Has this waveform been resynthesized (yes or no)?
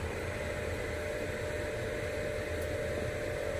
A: no